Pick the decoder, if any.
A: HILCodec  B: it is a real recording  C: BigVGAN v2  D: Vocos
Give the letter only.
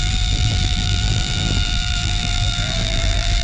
C